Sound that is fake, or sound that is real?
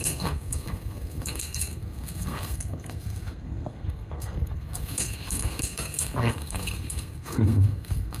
fake